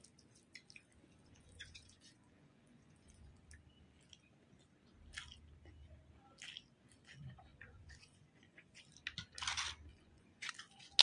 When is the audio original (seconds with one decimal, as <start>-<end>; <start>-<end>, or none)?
0.0-1.2; 3.4-7.5; 8.8-9.9; 10.5-11.0